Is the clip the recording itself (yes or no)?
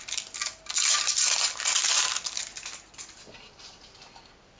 yes